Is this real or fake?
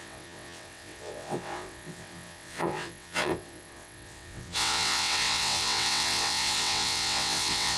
fake